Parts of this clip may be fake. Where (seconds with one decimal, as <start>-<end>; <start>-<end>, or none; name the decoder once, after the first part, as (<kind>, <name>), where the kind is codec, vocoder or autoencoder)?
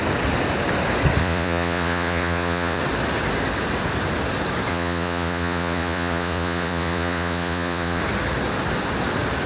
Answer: 1.2-2.8 (vocoder, Vocos); 4.7-8.0